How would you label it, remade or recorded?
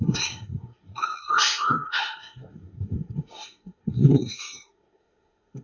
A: remade